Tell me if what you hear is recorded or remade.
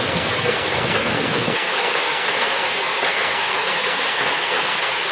remade